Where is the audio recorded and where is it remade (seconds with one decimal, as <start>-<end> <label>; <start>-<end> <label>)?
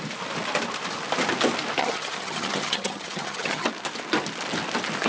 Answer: 0.0-1.8 recorded; 1.8-3.7 remade; 3.7-5.1 recorded